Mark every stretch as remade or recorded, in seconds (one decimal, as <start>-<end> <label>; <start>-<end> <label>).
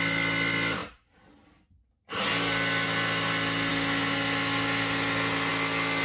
0.0-6.0 recorded